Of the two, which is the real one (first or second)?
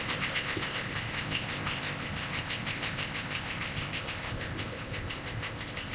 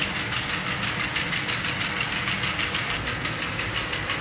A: second